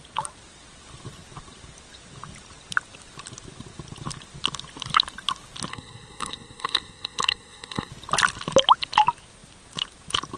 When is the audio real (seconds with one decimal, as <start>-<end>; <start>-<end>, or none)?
0.0-5.7; 7.9-10.4